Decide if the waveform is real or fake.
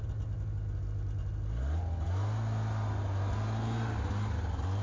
real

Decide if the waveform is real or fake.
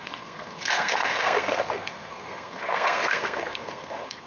fake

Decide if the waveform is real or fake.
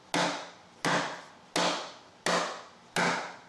real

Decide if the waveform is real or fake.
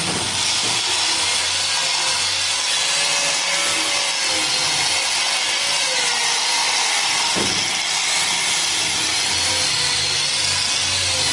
real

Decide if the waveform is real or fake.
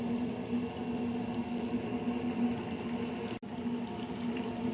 real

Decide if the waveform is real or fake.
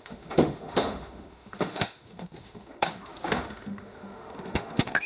fake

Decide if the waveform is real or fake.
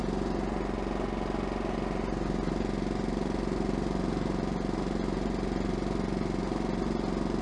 real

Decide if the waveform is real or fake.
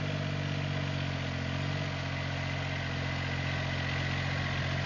real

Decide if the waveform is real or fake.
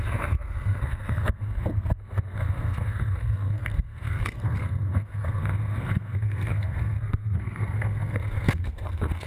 fake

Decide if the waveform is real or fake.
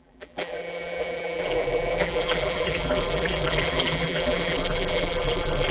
fake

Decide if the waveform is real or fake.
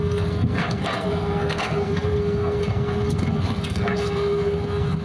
fake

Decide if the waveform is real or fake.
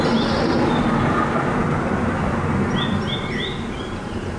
real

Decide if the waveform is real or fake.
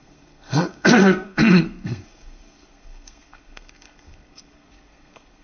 fake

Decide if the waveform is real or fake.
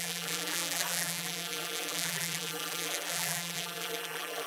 fake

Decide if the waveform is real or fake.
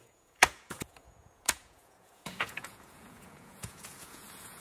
fake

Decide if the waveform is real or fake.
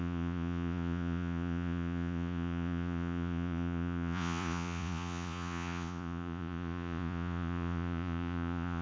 fake